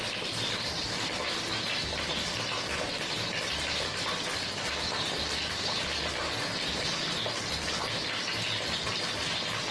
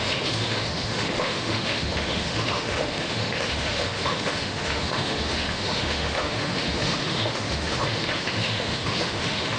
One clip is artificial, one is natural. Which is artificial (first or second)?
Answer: second